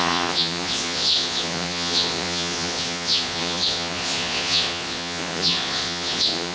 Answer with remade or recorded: remade